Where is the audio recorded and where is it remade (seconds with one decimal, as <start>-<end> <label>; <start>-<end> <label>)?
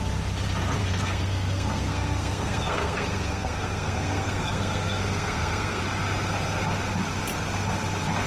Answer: 0.0-0.8 recorded; 0.8-5.8 remade; 5.8-8.3 recorded